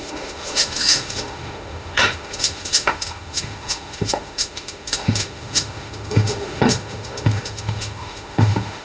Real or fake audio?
fake